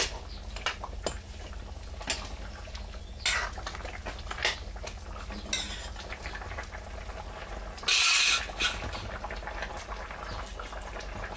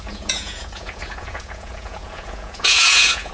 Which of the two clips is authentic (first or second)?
first